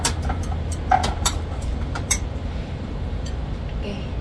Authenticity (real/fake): fake